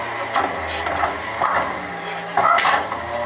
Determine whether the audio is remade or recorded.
recorded